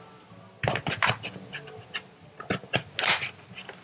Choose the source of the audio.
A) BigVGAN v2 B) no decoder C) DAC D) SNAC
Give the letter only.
B